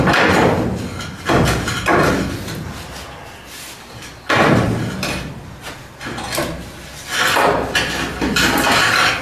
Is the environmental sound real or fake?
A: real